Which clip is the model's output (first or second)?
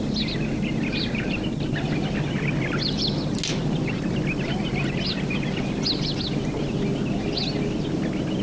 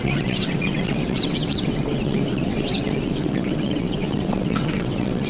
second